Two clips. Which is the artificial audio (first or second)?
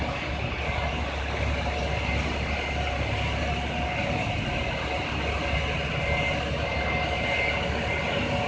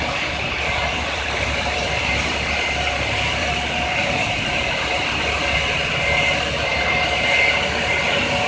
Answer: second